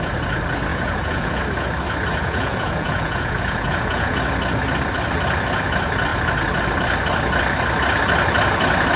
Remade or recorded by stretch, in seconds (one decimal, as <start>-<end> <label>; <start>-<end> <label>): 0.0-0.7 recorded; 0.7-1.4 remade; 1.4-2.1 recorded; 2.1-4.2 remade; 4.2-9.0 recorded